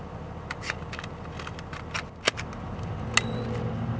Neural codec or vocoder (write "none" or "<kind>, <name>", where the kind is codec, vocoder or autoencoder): none